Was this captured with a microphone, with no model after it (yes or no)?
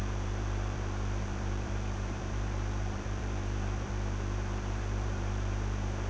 no